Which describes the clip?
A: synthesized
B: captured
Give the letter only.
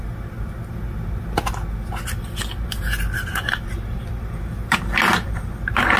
B